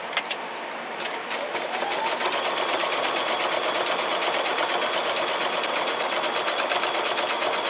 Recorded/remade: recorded